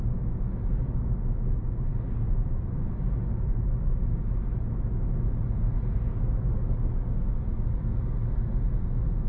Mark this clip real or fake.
real